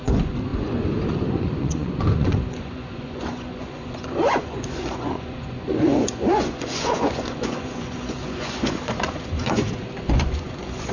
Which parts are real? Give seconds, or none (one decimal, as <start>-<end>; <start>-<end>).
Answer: none